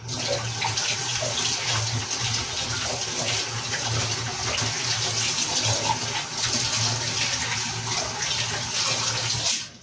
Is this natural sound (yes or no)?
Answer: yes